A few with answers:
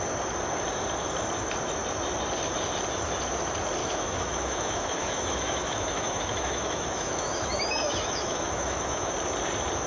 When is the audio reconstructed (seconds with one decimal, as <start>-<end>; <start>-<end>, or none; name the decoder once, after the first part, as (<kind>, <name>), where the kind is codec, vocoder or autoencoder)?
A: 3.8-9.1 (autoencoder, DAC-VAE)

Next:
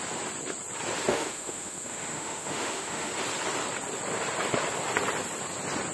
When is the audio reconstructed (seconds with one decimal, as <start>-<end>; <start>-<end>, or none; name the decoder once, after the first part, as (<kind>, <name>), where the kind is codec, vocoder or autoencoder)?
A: 1.1-3.1 (autoencoder, DAC-VAE)

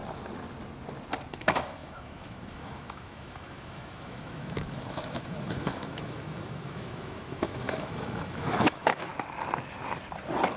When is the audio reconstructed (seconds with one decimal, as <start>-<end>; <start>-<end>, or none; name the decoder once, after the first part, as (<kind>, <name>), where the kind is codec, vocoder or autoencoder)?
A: 1.3-9.1 (autoencoder, DAC-VAE)